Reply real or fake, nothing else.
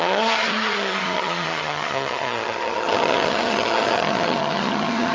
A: fake